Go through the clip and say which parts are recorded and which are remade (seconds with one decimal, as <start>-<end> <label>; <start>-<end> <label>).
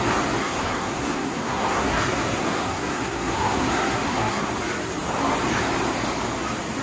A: 0.0-0.4 recorded; 0.4-4.5 remade; 4.5-6.8 recorded